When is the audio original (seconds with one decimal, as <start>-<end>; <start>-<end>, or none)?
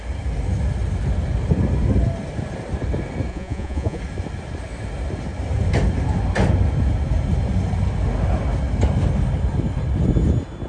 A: 0.0-3.3; 4.0-10.7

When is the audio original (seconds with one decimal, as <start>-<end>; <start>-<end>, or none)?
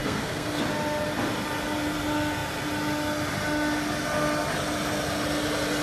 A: 0.6-5.8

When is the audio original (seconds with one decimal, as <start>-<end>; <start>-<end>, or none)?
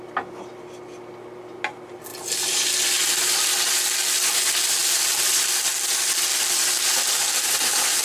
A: 0.0-2.1; 3.5-4.8; 5.5-6.3; 7.0-8.0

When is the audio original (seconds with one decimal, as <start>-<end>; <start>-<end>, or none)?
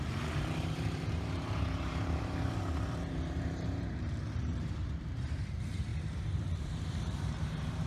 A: none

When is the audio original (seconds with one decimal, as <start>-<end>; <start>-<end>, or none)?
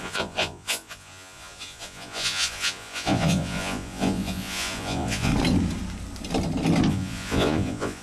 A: 5.3-6.9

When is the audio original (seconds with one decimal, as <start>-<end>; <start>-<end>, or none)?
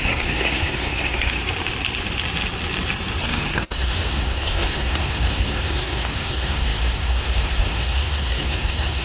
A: 1.4-3.2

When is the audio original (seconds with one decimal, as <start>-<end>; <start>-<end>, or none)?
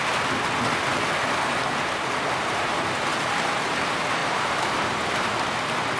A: 0.0-4.2; 5.4-6.0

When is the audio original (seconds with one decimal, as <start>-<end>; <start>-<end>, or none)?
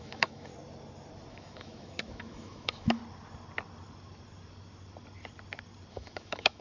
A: 0.5-1.3; 3.0-5.9